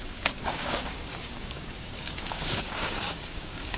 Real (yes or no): no